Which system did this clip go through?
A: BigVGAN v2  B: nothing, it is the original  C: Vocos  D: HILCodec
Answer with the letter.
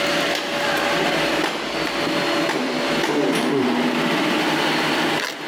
B